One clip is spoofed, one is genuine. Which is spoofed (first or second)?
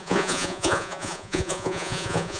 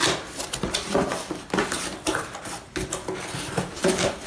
first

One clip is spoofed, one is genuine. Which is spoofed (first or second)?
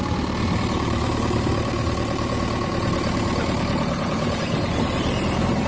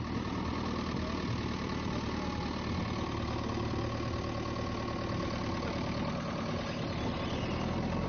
first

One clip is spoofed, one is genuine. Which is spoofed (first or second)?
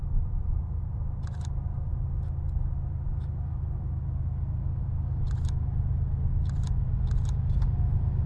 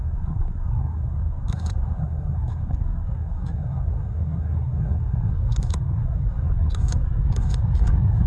second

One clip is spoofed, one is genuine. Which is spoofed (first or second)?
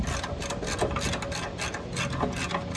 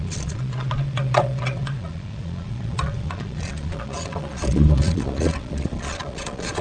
second